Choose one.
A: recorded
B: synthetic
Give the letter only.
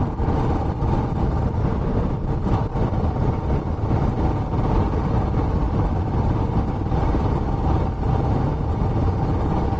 A